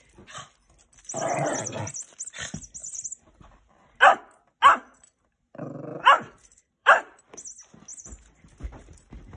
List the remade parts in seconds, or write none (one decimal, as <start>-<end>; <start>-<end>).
2.8-4.0; 5.9-7.2; 7.9-8.7

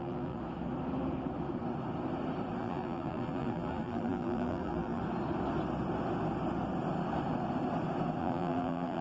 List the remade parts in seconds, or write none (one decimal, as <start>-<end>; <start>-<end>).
0.0-0.4; 2.6-5.0; 8.2-9.0

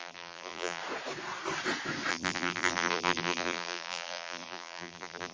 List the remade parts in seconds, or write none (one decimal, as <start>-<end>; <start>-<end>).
0.0-0.8; 2.1-5.3